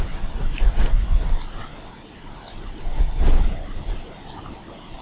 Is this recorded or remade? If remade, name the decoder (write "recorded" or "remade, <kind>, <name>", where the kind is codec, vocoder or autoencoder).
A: recorded